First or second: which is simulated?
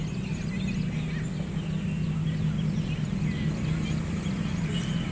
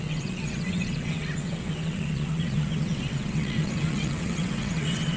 second